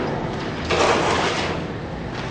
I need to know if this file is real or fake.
real